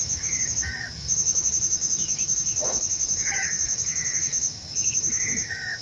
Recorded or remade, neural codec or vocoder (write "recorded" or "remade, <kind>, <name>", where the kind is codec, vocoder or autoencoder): remade, autoencoder, DAC-VAE